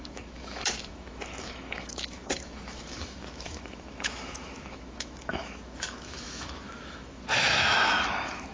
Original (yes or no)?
no